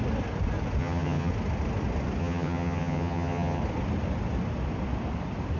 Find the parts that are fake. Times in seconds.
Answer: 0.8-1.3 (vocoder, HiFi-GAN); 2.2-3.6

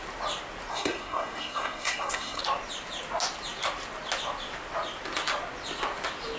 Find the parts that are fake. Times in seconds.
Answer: 0.7-2.4 (codec, SNAC)

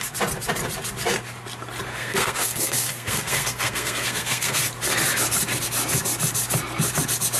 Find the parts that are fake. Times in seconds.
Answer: 1.9-4.6 (codec, SNAC)

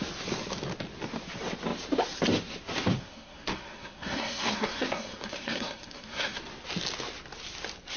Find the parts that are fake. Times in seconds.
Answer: 3.0-6.4 (codec, SNAC)